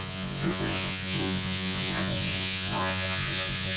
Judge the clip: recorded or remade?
remade